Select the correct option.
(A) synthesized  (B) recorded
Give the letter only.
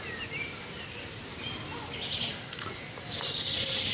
B